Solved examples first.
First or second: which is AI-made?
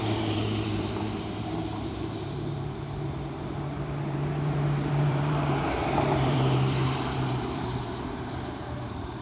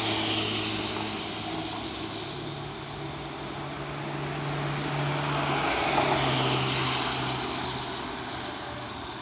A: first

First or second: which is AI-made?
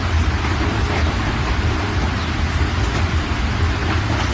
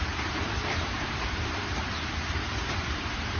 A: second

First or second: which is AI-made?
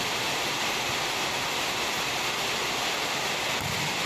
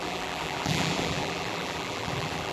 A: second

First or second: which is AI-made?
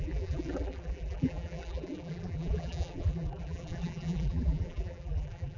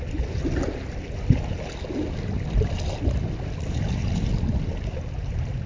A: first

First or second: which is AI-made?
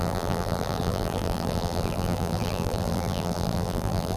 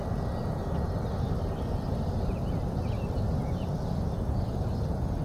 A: first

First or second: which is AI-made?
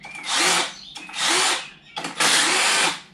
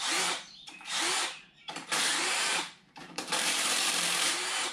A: second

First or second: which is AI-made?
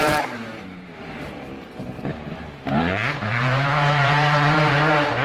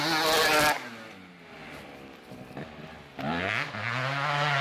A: first